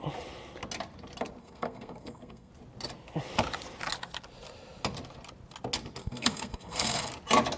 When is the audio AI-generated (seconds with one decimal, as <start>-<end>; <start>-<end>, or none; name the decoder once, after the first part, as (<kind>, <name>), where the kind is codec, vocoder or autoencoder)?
1.4-2.5 (codec, SNAC); 6.0-7.1